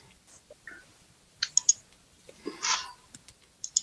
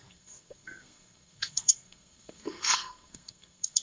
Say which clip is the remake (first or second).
second